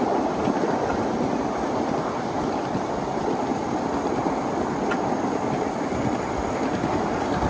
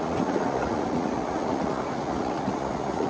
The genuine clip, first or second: first